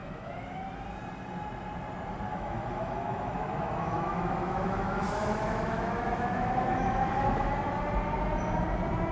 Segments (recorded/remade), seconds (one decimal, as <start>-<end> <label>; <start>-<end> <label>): 0.0-0.6 remade; 0.6-2.3 recorded; 2.3-7.5 remade; 7.5-9.1 recorded